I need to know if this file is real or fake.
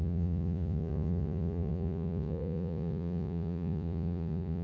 fake